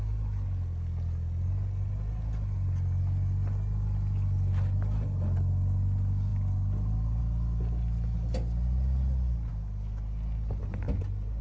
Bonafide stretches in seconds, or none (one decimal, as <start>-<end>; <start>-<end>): 0.0-11.4